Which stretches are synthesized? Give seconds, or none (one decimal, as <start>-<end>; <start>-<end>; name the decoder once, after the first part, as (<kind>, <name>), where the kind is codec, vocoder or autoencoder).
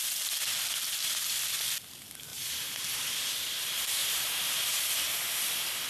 4.0-4.6 (vocoder, BigVGAN v2)